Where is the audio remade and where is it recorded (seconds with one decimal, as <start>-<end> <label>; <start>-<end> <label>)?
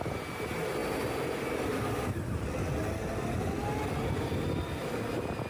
0.0-5.5 recorded